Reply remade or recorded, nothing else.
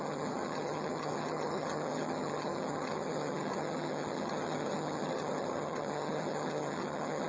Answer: remade